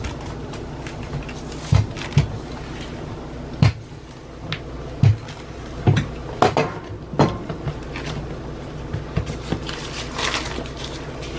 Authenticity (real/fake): real